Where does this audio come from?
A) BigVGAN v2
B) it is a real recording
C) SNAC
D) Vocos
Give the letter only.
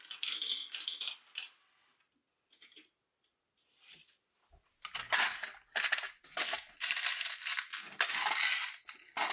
B